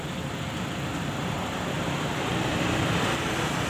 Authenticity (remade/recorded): remade